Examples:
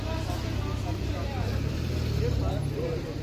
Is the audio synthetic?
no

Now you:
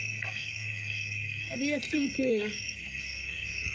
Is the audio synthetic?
yes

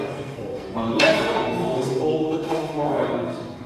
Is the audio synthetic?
yes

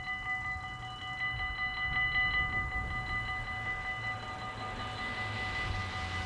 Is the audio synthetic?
no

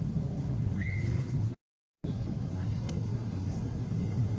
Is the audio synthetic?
yes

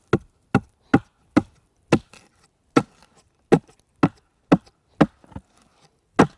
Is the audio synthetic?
no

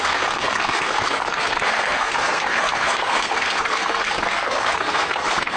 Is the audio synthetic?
yes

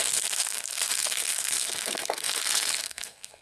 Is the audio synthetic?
yes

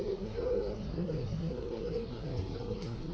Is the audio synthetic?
yes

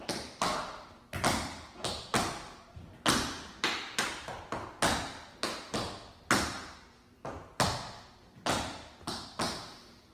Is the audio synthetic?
no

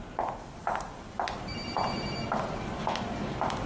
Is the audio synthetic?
no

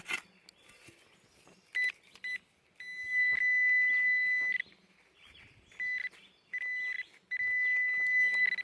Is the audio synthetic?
no